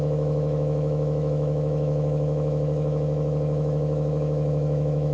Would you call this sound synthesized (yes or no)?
yes